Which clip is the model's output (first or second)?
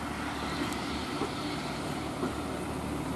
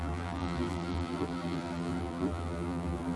second